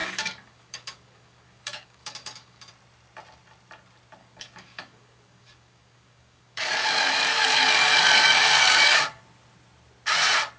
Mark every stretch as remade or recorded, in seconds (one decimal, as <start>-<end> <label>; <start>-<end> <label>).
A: 0.0-2.7 remade; 2.7-4.2 recorded; 4.2-9.2 remade; 9.2-10.6 recorded